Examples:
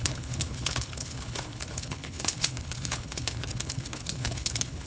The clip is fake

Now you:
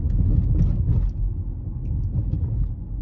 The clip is real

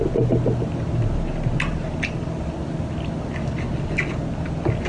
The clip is real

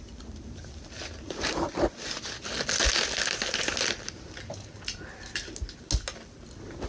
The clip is real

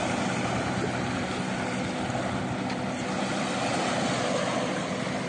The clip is real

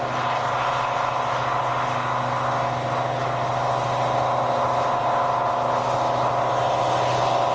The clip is real